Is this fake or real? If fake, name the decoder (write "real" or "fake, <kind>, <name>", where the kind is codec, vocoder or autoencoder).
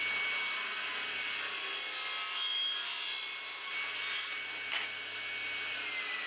real